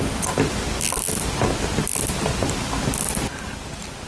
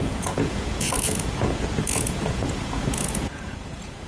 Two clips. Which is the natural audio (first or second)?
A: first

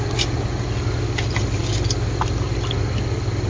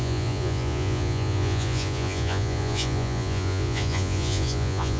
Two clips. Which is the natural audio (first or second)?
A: first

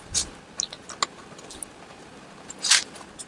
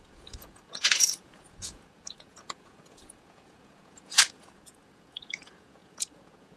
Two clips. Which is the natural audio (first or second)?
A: first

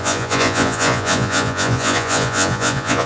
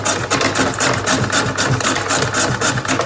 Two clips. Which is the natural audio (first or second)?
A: second